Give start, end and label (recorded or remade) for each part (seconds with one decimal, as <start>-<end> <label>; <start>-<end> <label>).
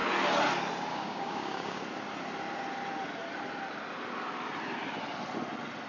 0.0-0.9 recorded; 0.9-1.8 remade; 1.8-5.9 recorded